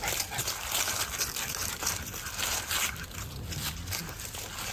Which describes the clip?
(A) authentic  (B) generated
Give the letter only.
A